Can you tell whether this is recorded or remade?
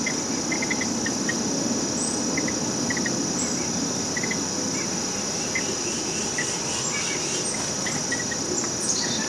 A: recorded